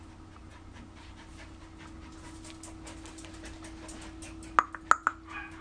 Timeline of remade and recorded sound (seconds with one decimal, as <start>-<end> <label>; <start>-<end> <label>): 0.0-5.6 recorded